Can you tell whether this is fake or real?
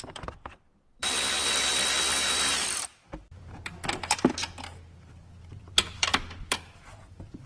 fake